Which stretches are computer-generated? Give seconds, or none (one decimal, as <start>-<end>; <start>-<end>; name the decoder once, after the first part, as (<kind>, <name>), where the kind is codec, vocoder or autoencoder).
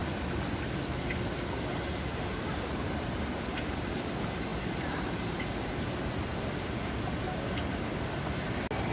none